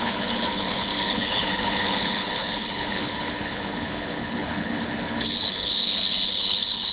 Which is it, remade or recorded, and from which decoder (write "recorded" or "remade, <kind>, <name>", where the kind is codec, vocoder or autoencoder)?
remade, codec, HILCodec